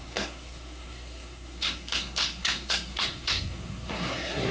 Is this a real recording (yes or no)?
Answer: no